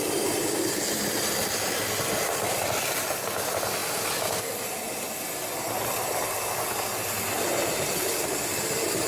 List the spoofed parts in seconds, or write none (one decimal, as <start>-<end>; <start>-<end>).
none

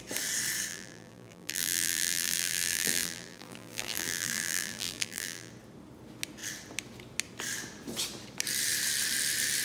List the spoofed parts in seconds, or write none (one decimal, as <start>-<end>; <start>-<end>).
0.7-5.5

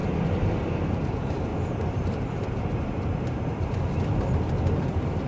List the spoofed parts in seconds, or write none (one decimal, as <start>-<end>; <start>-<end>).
0.9-1.5; 4.7-5.3

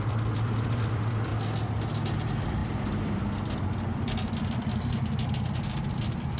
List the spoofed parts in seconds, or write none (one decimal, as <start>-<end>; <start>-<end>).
0.0-1.3; 1.9-6.4

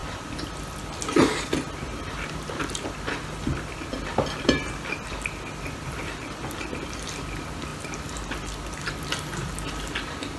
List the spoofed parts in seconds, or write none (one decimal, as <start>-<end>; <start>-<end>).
3.3-4.6; 6.2-10.4